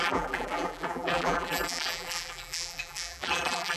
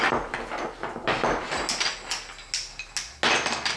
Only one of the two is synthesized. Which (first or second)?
first